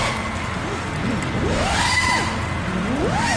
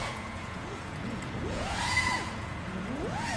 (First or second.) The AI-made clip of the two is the second